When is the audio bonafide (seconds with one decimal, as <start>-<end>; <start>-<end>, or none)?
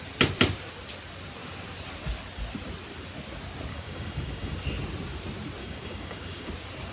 0.0-3.7; 4.5-5.6; 6.5-6.9